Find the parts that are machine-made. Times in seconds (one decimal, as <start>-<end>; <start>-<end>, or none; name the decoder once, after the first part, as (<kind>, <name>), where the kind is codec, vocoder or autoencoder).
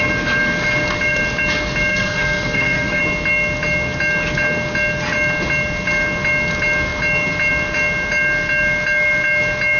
1.9-3.0 (codec, SNAC)